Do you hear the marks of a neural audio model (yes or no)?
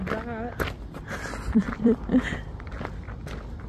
yes